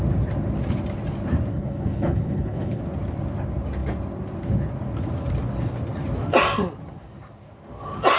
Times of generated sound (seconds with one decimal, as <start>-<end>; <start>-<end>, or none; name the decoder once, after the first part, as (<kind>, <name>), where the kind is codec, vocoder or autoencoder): 1.5-2.8 (codec, HILCodec)